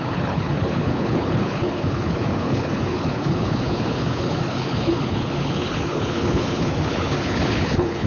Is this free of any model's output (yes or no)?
no